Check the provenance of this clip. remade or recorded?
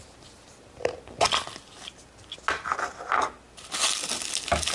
recorded